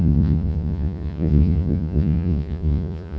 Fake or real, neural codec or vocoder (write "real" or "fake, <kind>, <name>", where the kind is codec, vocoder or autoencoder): fake, vocoder, Vocos